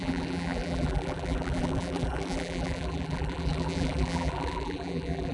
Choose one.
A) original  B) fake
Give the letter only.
B